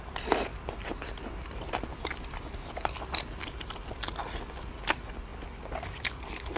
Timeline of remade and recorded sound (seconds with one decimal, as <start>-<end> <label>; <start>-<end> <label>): 0.0-6.6 recorded